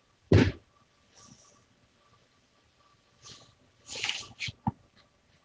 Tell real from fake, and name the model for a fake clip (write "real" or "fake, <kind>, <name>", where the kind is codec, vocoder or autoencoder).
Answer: real